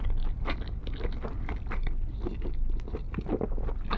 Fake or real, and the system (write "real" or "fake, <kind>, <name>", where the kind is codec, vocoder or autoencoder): real